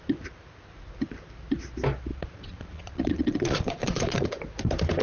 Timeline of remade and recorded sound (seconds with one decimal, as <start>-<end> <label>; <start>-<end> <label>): 0.0-2.1 recorded; 2.1-4.4 remade; 4.4-5.0 recorded